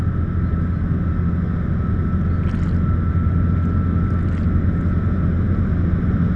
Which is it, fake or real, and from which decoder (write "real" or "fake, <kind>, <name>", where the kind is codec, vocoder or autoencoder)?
real